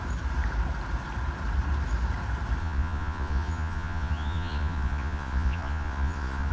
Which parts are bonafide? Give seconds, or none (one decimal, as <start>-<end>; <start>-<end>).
0.0-2.6